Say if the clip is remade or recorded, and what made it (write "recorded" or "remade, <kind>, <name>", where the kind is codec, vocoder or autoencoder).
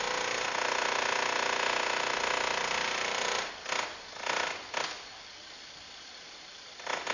recorded